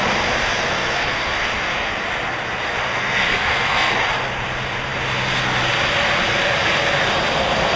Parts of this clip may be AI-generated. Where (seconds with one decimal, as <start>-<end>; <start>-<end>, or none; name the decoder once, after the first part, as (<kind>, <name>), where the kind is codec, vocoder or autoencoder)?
0.7-1.9 (codec, SNAC); 2.8-3.9